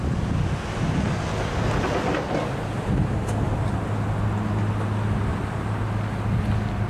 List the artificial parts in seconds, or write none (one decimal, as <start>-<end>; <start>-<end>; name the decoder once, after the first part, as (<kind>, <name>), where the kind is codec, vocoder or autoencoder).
none